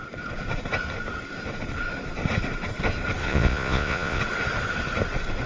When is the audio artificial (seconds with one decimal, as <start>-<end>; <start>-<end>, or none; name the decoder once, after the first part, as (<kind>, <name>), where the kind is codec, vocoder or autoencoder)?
3.2-4.2 (vocoder, Vocos)